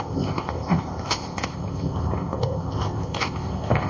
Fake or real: fake